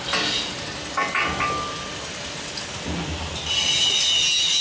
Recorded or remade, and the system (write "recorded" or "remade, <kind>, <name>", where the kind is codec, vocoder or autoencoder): recorded